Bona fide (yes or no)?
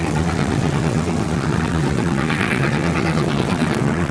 no